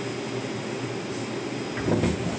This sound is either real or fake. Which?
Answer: real